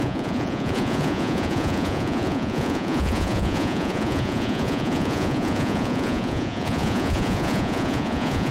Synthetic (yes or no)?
yes